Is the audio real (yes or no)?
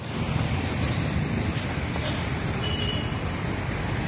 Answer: yes